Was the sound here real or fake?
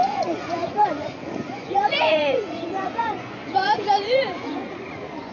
fake